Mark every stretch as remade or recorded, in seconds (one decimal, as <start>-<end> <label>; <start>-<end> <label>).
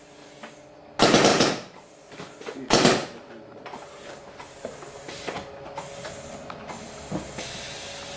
0.0-1.3 recorded; 1.3-2.1 remade; 2.1-3.0 recorded; 3.0-5.2 remade; 5.2-8.2 recorded